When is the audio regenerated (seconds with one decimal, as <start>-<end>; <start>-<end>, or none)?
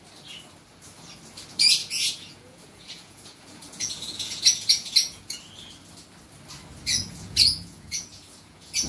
1.8-5.4; 6.8-8.9